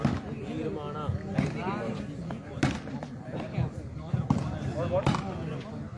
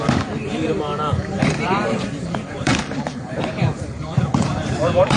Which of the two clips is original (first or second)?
first